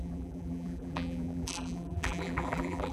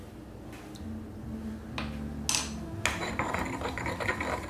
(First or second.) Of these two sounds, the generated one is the first